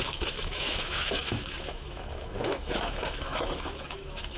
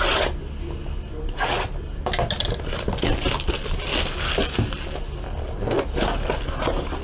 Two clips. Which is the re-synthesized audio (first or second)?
first